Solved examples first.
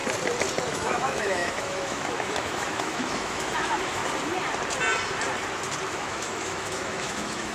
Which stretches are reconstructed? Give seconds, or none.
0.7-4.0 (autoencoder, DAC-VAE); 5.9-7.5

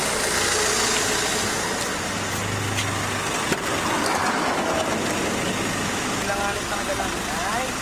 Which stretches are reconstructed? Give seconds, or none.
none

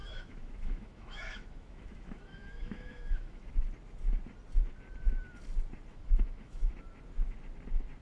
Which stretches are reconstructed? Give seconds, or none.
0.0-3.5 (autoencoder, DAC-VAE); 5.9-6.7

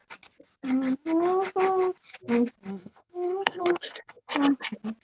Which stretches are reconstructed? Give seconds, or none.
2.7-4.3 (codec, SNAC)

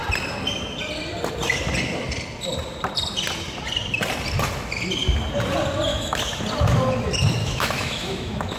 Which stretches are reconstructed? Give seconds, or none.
5.9-6.4 (autoencoder, DAC-VAE); 7.4-8.6

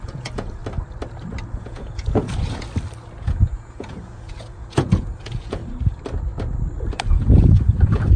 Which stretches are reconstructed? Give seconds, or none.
0.0-0.6 (vocoder, Vocos); 1.6-2.3; 3.2-5.6; 7.0-8.2

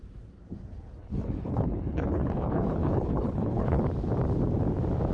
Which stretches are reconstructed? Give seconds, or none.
1.0-3.8 (codec, HILCodec)